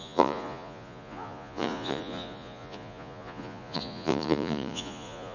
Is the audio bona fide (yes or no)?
no